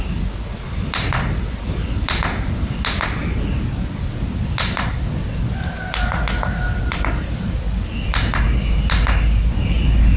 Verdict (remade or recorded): recorded